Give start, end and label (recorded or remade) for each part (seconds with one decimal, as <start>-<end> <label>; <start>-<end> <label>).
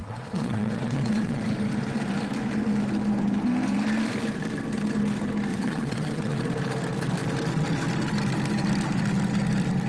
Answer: 0.0-1.4 remade; 1.4-5.5 recorded; 5.5-6.4 remade; 6.4-9.9 recorded